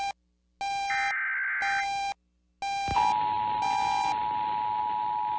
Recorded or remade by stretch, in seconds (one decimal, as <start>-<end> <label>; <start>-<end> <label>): 0.0-5.4 recorded